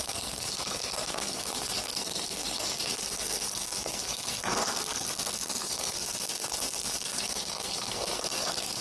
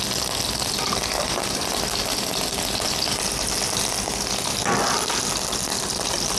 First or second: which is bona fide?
second